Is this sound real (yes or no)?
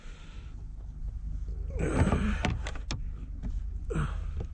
yes